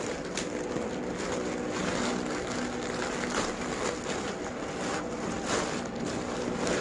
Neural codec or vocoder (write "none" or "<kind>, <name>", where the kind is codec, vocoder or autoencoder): none